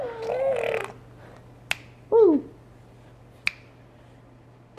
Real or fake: real